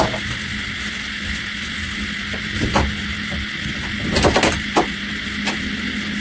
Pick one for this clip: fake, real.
real